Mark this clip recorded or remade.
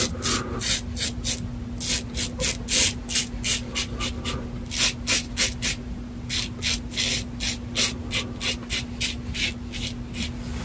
recorded